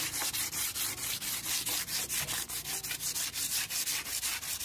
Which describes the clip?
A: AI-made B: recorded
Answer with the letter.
B